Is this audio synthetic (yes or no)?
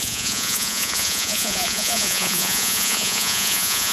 yes